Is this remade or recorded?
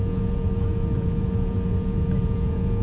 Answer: remade